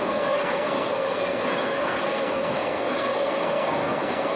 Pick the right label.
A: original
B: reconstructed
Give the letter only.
B